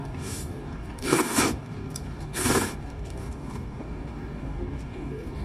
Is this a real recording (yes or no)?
no